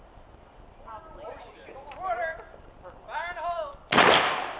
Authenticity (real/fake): real